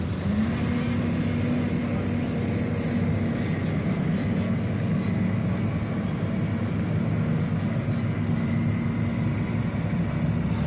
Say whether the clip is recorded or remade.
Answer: recorded